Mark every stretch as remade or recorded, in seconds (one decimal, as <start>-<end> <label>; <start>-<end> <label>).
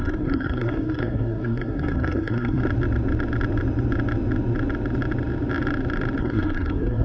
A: 0.0-2.6 remade; 2.6-6.2 recorded; 6.2-7.0 remade